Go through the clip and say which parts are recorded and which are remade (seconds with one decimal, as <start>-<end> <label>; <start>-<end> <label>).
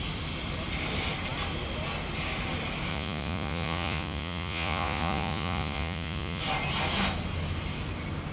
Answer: 0.0-2.9 recorded; 2.9-6.4 remade; 6.4-8.3 recorded